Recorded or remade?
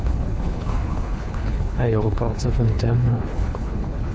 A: remade